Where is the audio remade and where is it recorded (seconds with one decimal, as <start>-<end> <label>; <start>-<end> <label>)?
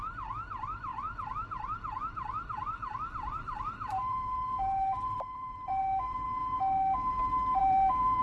0.0-0.9 recorded; 0.9-5.8 remade; 5.8-7.6 recorded; 7.6-8.2 remade